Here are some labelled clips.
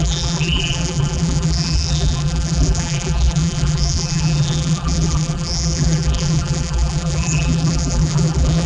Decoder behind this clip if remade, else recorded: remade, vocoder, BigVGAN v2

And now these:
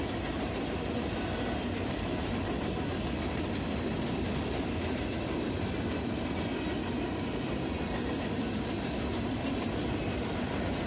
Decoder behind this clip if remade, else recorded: recorded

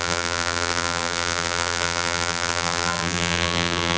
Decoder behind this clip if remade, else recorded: remade, vocoder, BigVGAN v2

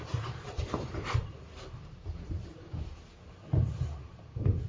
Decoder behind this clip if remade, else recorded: remade, vocoder, BigVGAN v2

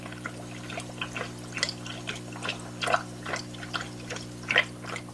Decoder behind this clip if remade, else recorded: recorded